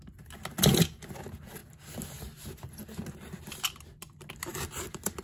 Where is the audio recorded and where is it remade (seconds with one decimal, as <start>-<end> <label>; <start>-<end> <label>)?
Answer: 0.0-5.2 recorded

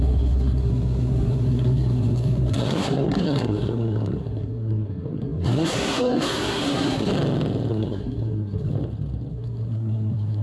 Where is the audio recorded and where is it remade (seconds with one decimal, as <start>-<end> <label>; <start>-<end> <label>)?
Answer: 0.0-7.1 remade; 7.1-7.7 recorded; 7.7-8.7 remade; 8.7-9.3 recorded; 9.3-10.4 remade

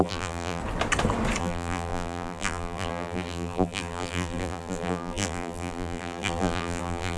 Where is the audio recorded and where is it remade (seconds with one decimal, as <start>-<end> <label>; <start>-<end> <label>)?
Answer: 0.0-0.6 remade; 0.6-1.4 recorded; 1.4-7.2 remade